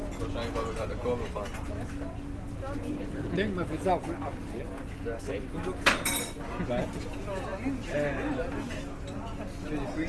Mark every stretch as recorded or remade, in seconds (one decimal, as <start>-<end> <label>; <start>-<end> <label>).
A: 0.0-10.1 recorded